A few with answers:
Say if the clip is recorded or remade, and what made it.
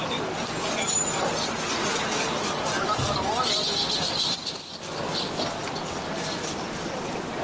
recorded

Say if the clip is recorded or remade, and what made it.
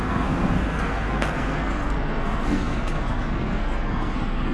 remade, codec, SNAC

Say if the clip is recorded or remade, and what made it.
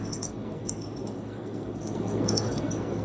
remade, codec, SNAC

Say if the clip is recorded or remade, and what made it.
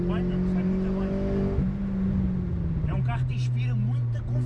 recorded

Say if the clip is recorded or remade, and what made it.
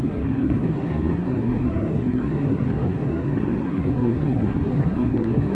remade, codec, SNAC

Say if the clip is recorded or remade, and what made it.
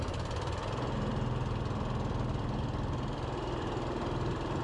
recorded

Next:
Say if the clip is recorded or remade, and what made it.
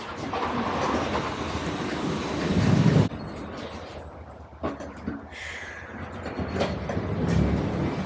recorded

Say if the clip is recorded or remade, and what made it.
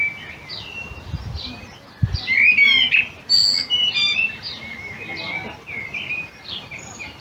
recorded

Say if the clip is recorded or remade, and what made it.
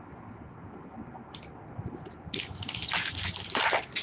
recorded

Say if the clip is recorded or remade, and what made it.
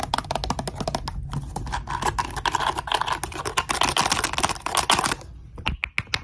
recorded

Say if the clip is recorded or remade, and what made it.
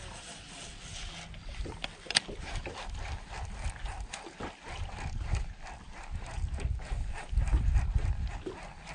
recorded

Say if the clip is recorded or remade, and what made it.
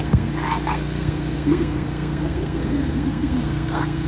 remade, codec, SNAC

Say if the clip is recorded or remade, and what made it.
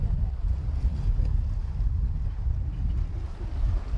recorded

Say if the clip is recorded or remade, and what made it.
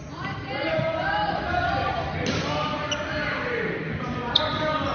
recorded